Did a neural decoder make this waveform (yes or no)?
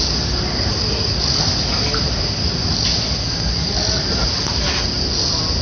no